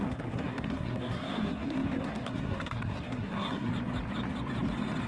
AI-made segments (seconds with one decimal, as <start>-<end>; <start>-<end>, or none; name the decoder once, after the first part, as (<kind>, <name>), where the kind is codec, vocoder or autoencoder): 0.0-3.7 (codec, SNAC)